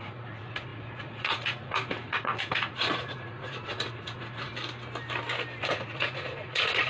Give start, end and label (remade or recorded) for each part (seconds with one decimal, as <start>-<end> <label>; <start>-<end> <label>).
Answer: 0.0-4.5 remade; 4.5-5.6 recorded; 5.6-6.9 remade